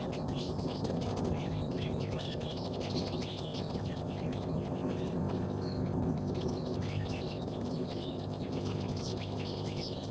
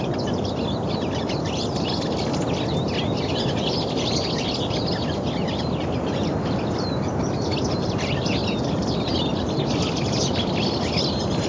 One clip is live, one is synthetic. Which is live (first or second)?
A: second